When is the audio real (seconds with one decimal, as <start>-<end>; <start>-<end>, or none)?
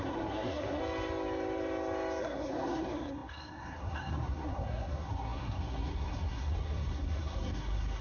0.8-2.2